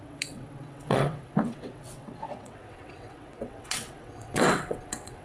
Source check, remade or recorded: remade